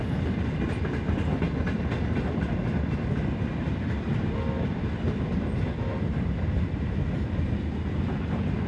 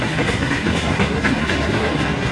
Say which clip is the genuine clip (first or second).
first